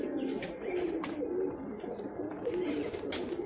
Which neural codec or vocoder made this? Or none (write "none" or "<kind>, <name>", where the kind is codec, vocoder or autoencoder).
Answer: none